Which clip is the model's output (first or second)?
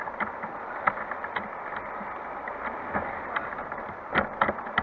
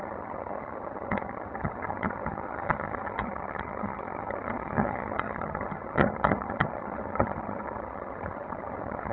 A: second